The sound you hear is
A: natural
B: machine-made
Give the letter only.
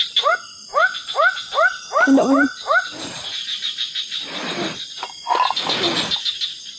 A